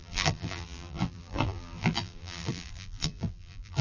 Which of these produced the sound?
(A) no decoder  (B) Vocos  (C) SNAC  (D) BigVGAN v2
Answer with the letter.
D